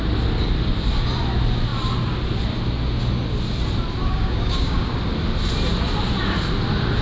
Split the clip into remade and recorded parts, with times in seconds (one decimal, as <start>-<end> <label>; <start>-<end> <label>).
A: 0.0-4.0 recorded; 4.0-4.9 remade; 4.9-7.0 recorded